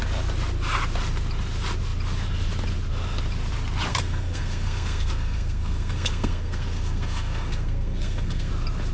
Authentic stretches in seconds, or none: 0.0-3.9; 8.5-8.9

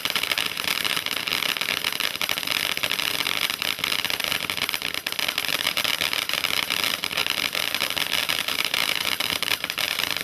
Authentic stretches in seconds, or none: 1.3-5.5; 7.2-8.2

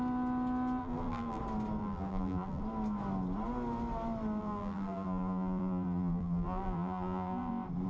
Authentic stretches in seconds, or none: 0.0-0.8; 1.4-1.8; 2.6-4.4; 7.5-7.9

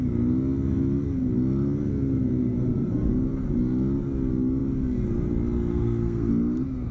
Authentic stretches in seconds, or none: 0.0-2.4; 3.1-5.7; 6.3-6.9

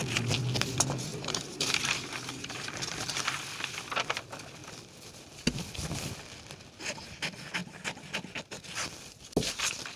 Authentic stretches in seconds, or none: 0.0-1.1; 3.4-10.0

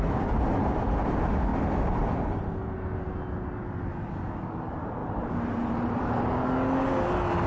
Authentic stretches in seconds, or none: 0.0-5.0; 6.2-7.5

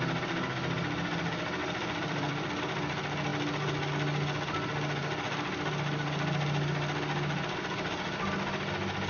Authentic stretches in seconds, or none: 0.0-1.6; 2.6-9.1